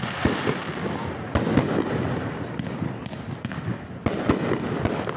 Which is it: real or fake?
real